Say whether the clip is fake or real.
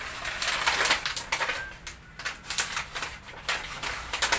real